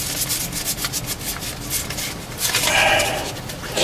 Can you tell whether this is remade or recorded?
recorded